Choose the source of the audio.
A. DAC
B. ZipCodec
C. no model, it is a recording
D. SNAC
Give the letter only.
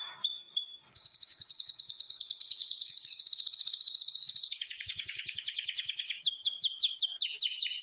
A